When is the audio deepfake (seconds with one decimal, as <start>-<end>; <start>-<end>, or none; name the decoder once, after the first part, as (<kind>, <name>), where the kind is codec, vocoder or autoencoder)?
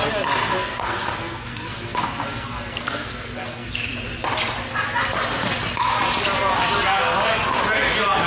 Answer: 0.5-3.9 (codec, SNAC)